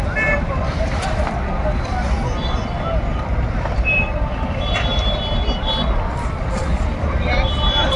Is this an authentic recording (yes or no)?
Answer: no